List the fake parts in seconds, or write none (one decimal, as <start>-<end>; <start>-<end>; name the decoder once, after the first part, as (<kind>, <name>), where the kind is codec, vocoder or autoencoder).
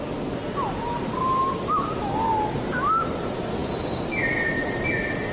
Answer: none